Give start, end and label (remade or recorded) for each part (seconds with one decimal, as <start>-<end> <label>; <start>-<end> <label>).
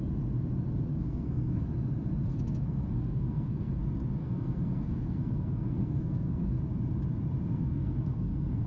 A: 0.0-0.9 recorded; 0.9-1.6 remade; 1.6-2.3 recorded; 2.3-3.7 remade; 3.7-4.2 recorded; 4.2-6.6 remade; 6.6-7.5 recorded; 7.5-8.7 remade